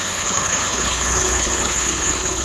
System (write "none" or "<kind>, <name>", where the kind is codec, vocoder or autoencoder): codec, HILCodec